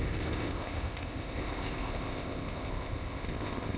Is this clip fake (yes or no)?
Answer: yes